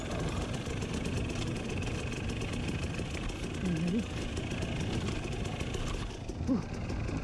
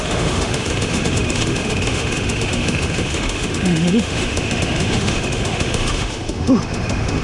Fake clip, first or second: second